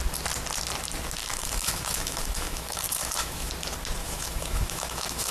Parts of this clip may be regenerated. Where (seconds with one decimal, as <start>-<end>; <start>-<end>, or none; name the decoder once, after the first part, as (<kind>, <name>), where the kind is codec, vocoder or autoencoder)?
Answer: 1.2-3.5 (autoencoder, DAC-VAE); 4.0-5.3